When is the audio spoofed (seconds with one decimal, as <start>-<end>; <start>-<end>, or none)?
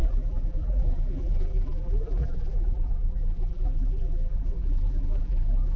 0.0-5.8